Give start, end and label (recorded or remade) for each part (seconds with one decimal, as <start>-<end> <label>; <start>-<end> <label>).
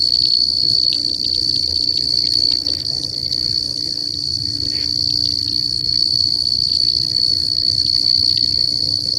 0.0-4.8 remade; 4.8-5.4 recorded; 5.4-9.2 remade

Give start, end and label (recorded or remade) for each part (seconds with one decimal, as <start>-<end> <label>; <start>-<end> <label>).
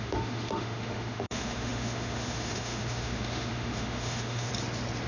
0.0-4.5 remade; 4.5-5.1 recorded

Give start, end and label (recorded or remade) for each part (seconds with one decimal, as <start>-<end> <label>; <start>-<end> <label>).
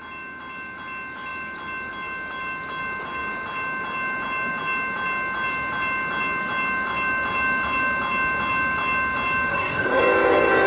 0.0-9.5 recorded; 9.5-10.0 remade; 10.0-10.7 recorded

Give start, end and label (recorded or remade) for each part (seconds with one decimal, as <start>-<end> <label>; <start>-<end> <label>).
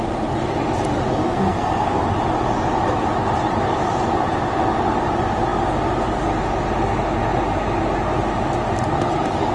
0.0-1.2 recorded; 1.2-2.0 remade; 2.0-9.5 recorded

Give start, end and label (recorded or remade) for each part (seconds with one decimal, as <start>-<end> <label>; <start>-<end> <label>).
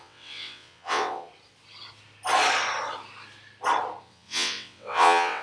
0.0-1.3 remade; 1.3-4.0 recorded; 4.0-5.4 remade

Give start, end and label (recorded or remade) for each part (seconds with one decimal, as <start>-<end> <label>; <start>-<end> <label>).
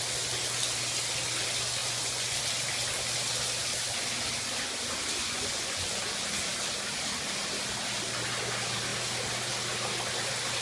0.0-1.8 recorded; 1.8-2.4 remade; 2.4-5.2 recorded; 5.2-6.0 remade; 6.0-10.6 recorded